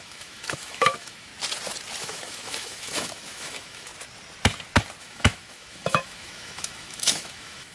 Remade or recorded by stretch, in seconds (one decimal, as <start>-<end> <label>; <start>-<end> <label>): 0.0-1.3 remade; 1.3-2.0 recorded; 2.0-3.9 remade; 3.9-5.0 recorded; 5.0-7.7 remade